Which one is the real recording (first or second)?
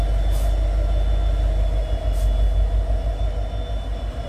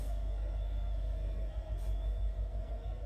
first